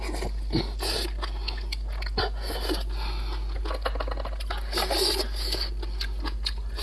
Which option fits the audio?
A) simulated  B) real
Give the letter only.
B